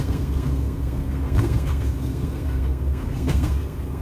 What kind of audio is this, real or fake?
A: fake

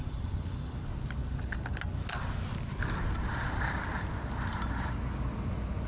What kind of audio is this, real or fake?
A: real